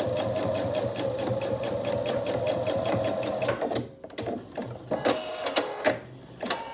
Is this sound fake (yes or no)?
no